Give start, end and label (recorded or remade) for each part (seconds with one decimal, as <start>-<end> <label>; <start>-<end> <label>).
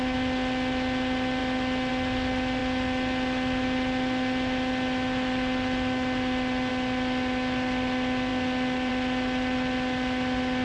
0.0-10.6 recorded